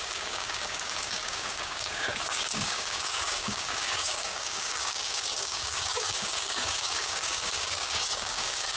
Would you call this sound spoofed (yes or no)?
yes